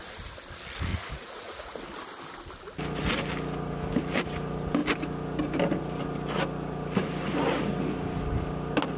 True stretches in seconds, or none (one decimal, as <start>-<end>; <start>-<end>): 0.0-0.9; 1.8-9.0